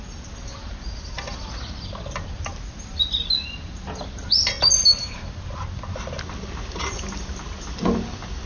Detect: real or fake real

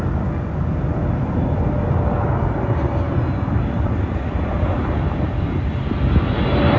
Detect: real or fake real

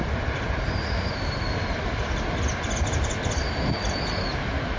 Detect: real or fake real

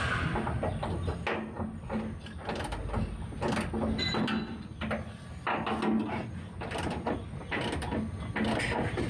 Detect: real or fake real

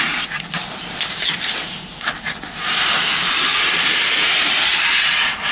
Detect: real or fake real